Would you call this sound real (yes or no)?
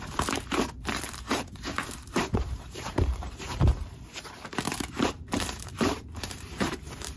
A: no